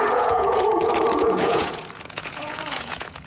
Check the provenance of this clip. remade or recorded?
remade